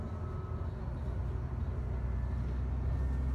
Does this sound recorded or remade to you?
recorded